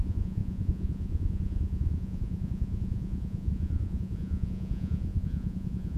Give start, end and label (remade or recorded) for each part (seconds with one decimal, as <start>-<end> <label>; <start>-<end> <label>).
0.0-6.0 remade